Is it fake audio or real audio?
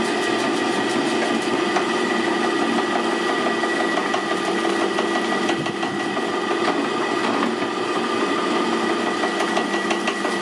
real